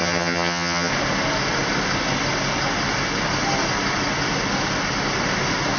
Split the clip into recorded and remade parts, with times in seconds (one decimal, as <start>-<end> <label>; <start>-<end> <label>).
0.0-0.9 remade; 0.9-5.8 recorded